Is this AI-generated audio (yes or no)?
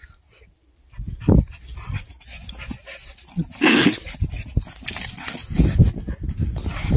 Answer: no